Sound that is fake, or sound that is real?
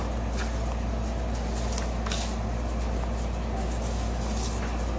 real